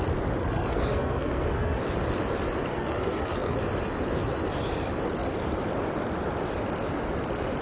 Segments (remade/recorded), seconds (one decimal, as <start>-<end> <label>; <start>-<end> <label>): 0.0-0.4 recorded; 0.4-1.8 remade; 1.8-2.7 recorded; 2.7-3.6 remade; 3.6-7.6 recorded

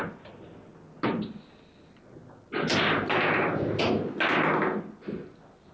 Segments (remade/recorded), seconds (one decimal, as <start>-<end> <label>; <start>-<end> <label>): 0.0-5.7 recorded

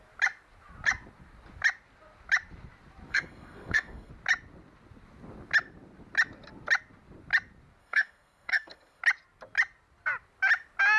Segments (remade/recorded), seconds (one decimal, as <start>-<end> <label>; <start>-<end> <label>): 0.0-3.1 recorded; 3.1-4.1 remade; 4.1-7.8 recorded; 7.8-9.0 remade; 9.0-11.0 recorded

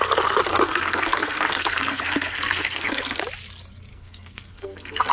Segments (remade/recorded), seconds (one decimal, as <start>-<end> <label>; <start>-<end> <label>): 0.0-0.5 recorded; 0.5-3.2 remade; 3.2-3.9 recorded; 3.9-5.1 remade

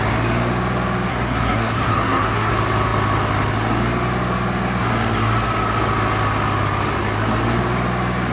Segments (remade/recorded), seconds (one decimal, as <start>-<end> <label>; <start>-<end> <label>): 0.0-1.1 recorded; 1.1-2.5 remade; 2.5-8.3 recorded

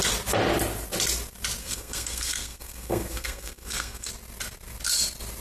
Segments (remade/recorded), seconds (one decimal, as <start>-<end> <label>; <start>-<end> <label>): 0.0-1.6 recorded; 1.6-4.1 remade; 4.1-5.4 recorded

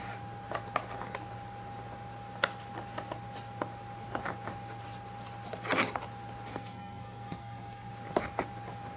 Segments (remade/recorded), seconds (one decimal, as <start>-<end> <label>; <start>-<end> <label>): 0.0-6.5 recorded; 6.5-7.9 remade; 7.9-9.0 recorded